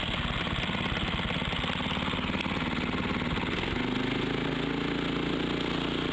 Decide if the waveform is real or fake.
real